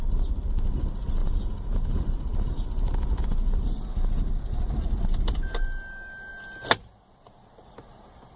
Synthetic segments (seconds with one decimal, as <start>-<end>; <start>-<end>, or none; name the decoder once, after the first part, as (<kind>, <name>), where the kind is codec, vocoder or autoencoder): 1.2-4.4 (vocoder, BigVGAN v2)